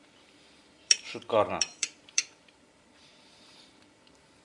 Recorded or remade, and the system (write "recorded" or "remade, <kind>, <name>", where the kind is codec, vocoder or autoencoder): remade, vocoder, BigVGAN v2